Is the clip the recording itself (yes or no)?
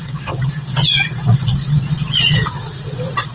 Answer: no